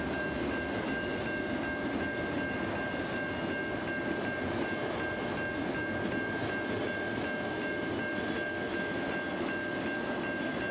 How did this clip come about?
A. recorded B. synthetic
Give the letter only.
A